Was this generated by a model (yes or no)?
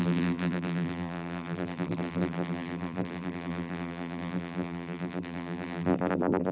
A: yes